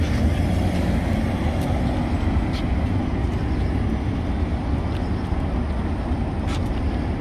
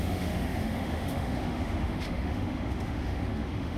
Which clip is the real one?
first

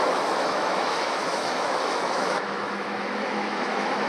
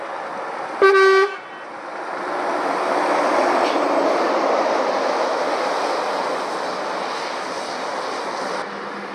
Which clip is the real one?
second